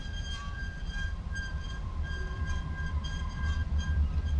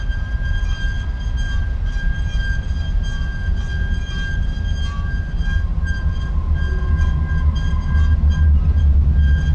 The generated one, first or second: first